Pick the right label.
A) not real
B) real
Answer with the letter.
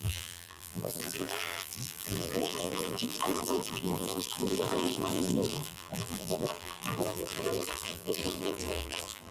A